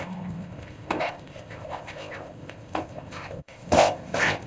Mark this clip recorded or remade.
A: remade